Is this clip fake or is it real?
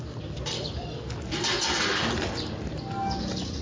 real